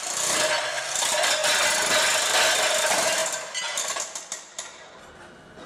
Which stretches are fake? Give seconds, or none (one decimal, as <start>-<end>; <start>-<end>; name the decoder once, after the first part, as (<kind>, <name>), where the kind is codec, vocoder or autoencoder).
none